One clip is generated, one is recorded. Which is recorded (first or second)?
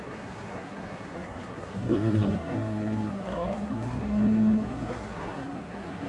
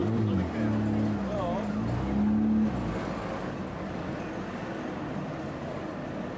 second